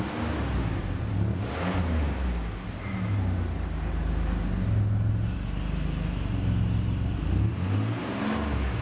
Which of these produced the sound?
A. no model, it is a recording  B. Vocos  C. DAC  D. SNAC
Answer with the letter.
A